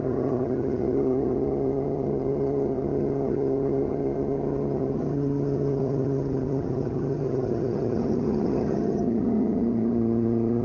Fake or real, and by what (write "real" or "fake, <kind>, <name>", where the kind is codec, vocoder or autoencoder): fake, vocoder, HiFi-GAN